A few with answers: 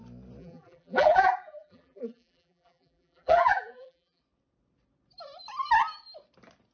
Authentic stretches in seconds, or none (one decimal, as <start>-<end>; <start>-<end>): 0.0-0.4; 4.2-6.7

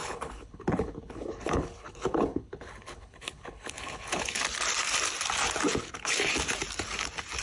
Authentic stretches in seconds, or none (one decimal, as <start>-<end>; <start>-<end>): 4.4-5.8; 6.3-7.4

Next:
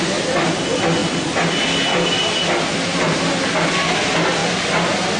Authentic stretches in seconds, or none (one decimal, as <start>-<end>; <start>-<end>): 0.0-5.2